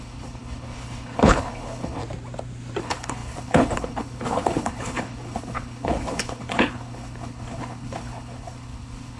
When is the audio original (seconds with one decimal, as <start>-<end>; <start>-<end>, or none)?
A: 2.0-2.8